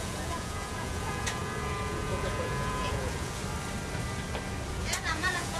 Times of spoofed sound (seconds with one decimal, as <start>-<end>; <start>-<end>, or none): 0.0-3.4; 4.7-5.6